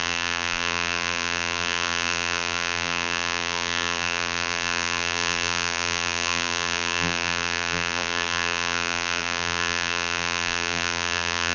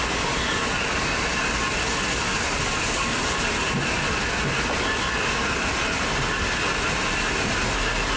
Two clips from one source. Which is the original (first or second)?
second